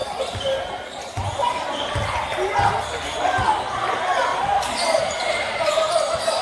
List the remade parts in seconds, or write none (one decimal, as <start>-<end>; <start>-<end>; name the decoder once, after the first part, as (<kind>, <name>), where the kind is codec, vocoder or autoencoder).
0.0-0.6 (vocoder, BigVGAN v2); 4.3-6.0